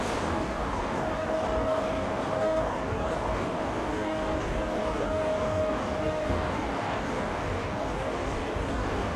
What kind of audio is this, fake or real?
fake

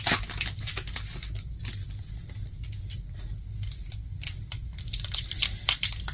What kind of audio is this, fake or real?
real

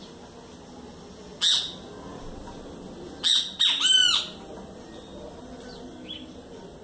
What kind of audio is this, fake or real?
real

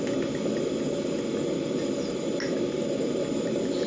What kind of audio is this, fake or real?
real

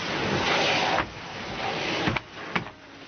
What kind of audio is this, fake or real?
real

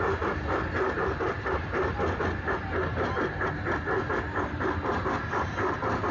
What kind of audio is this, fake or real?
real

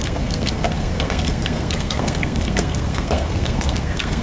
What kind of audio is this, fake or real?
fake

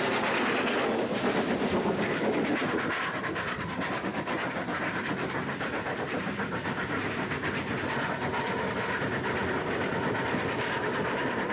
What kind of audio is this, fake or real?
real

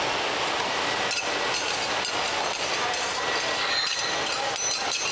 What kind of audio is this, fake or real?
real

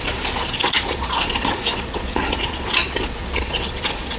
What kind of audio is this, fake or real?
fake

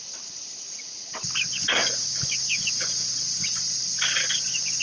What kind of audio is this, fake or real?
real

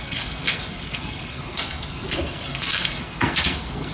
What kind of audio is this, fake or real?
fake